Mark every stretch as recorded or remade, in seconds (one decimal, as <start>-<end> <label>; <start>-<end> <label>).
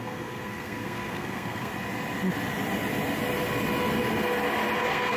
0.0-1.7 remade; 1.7-4.8 recorded; 4.8-5.2 remade